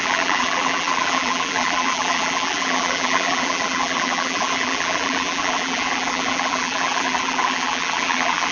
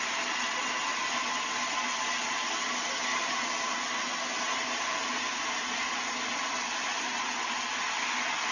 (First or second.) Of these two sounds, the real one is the second